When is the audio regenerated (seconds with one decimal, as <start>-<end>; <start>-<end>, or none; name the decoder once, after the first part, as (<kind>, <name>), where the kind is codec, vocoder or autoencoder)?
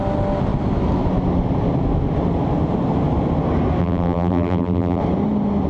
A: 3.8-5.0 (vocoder, BigVGAN v2)